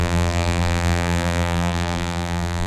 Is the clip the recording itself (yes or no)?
no